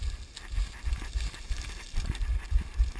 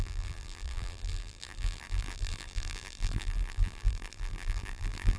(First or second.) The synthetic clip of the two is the second